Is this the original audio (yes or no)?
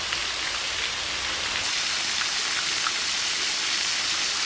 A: yes